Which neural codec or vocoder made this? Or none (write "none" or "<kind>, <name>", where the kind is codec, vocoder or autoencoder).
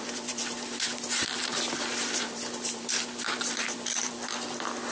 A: vocoder, BigVGAN v2